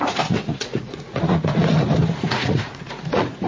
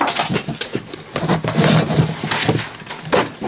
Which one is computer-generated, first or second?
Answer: first